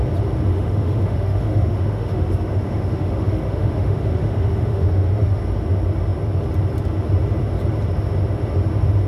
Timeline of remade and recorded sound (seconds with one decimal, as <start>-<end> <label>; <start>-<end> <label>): 0.0-0.5 recorded; 0.5-5.4 remade; 5.4-9.1 recorded